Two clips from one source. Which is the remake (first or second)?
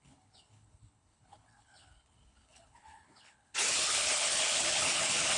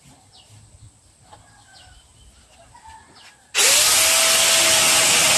first